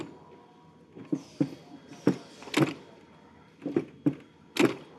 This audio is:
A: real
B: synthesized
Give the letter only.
A